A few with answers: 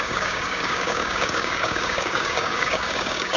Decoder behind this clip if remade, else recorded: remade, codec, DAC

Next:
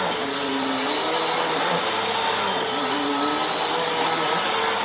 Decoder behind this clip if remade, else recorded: recorded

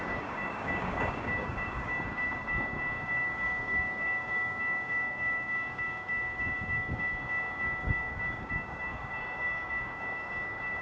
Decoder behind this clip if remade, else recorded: remade, codec, DAC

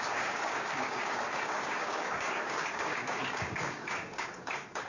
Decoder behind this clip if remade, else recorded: remade, codec, DAC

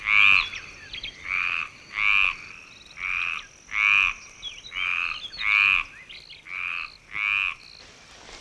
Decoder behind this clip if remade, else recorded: recorded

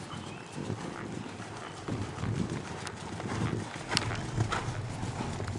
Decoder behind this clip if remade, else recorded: recorded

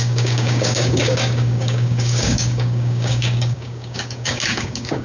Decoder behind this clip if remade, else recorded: remade, codec, DAC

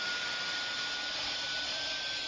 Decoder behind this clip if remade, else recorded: recorded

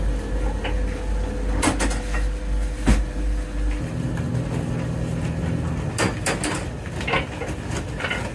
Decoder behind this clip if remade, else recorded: recorded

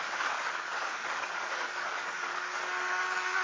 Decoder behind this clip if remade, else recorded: remade, codec, DAC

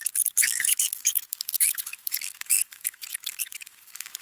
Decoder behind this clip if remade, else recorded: remade, codec, DAC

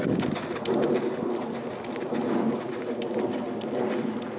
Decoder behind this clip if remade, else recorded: recorded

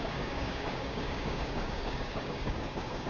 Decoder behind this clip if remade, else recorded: remade, codec, DAC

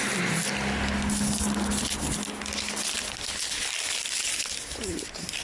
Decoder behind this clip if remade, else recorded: recorded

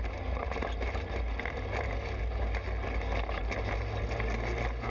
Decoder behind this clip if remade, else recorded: recorded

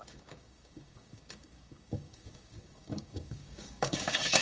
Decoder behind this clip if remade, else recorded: remade, codec, DAC